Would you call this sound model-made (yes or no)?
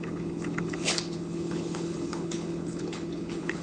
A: yes